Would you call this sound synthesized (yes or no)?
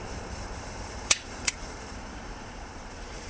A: yes